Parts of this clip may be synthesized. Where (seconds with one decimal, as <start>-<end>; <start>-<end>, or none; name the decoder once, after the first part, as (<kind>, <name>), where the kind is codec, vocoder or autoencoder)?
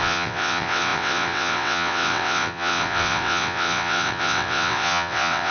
0.0-5.5 (vocoder, WaveNeXt)